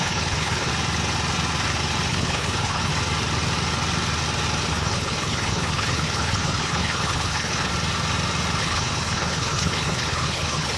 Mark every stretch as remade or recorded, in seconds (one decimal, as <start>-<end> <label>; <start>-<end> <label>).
0.0-0.7 remade; 0.7-2.1 recorded; 2.1-2.9 remade; 2.9-4.7 recorded; 4.7-7.7 remade; 7.7-8.6 recorded; 8.6-10.8 remade